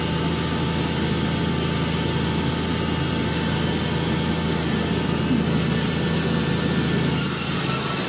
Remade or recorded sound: recorded